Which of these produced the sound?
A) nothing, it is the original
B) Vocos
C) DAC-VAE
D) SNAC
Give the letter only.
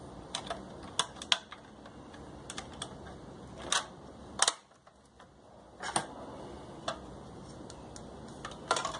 A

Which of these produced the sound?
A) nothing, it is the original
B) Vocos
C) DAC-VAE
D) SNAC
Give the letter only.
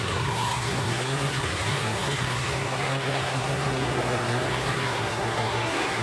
D